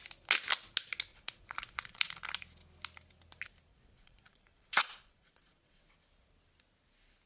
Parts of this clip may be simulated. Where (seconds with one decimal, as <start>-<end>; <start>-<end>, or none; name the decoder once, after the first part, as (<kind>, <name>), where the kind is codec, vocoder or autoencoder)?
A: 1.1-2.1 (vocoder, Vocos); 3.7-5.8